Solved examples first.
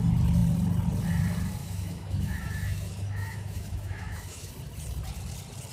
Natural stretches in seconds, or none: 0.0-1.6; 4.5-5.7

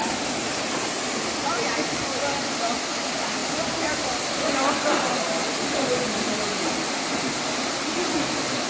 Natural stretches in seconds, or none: 0.0-8.7

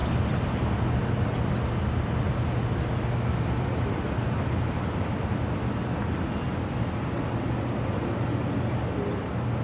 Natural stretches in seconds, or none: 0.0-9.6